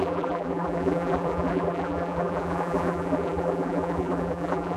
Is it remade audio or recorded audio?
remade